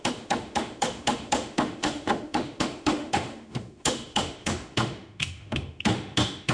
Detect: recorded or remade remade